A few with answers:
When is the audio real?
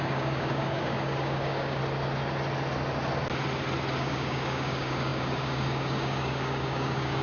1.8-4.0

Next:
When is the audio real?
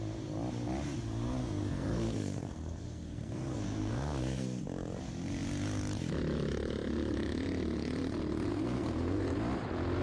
0.0-1.4; 4.6-8.5; 9.2-10.0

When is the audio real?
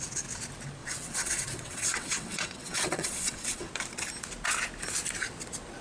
0.0-0.8; 3.7-5.8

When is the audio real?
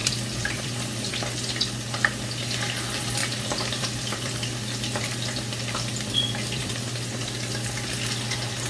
1.1-3.2; 6.6-8.7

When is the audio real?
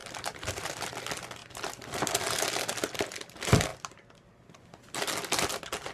0.8-1.4; 2.2-5.9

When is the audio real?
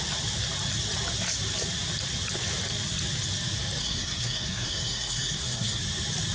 0.0-3.8; 5.8-6.3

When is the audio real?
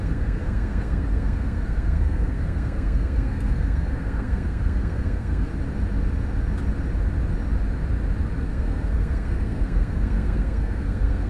5.5-8.4